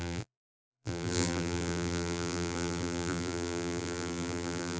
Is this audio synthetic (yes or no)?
yes